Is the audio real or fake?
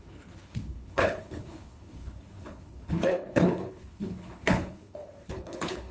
fake